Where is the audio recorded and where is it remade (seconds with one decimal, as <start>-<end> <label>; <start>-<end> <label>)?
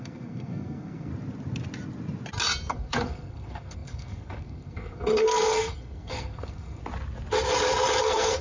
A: 0.0-1.1 remade; 1.1-2.7 recorded; 2.7-6.8 remade; 6.8-8.0 recorded; 8.0-8.4 remade